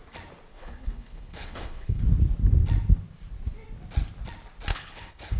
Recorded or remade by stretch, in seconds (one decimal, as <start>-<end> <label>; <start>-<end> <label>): 0.0-0.5 recorded; 0.5-2.0 remade; 2.0-4.7 recorded; 4.7-5.4 remade